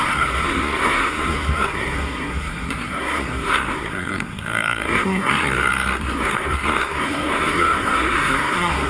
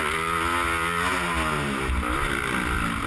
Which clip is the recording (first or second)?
second